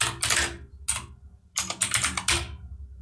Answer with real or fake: real